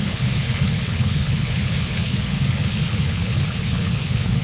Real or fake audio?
fake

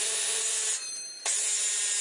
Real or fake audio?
real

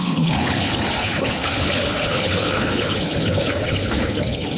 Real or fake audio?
fake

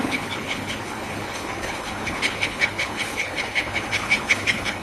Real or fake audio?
fake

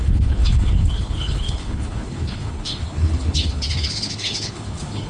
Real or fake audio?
fake